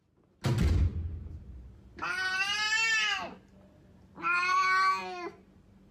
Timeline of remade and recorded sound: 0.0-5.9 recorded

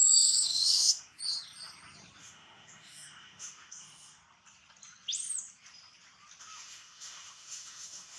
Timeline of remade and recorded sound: 0.0-1.2 remade; 1.2-2.2 recorded; 2.2-4.2 remade; 4.2-6.4 recorded; 6.4-8.2 remade

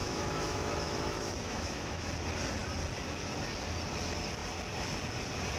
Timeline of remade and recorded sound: 0.0-2.1 remade; 2.1-5.6 recorded

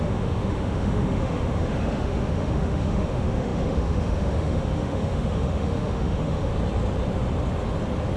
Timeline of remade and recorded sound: 0.0-6.5 remade; 6.5-8.2 recorded

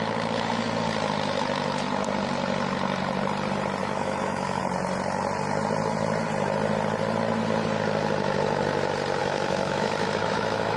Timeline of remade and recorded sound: 0.0-3.8 recorded; 3.8-4.6 remade; 4.6-9.2 recorded; 9.2-10.8 remade

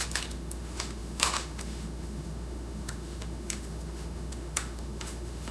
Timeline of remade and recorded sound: 0.0-5.5 remade

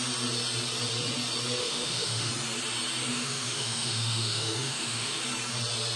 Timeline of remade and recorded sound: 0.0-1.6 recorded; 1.6-2.3 remade; 2.3-3.1 recorded; 3.1-5.2 remade; 5.2-6.0 recorded

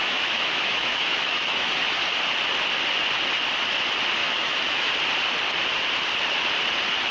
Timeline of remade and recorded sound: 0.0-1.7 remade; 1.7-4.2 recorded; 4.2-4.9 remade; 4.9-7.1 recorded